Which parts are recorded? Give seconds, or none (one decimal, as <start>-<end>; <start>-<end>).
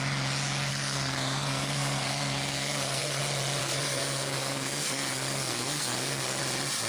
0.0-0.7; 3.2-3.6; 6.4-6.9